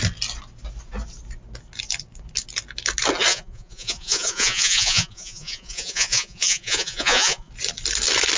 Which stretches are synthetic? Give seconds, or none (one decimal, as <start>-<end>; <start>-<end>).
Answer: 3.3-7.5